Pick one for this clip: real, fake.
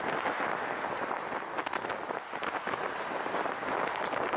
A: real